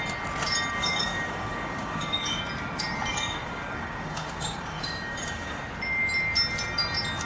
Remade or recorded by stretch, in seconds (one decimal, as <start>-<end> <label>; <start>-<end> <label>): 0.0-0.8 recorded; 0.8-2.4 remade; 2.4-3.1 recorded; 3.1-5.6 remade; 5.6-7.3 recorded